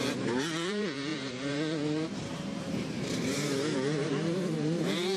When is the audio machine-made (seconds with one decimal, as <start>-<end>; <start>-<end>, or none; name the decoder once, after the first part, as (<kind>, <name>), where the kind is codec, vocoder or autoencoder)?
0.0-5.2 (vocoder, BigVGAN v2)